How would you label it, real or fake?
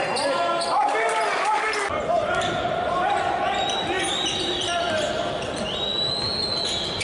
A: real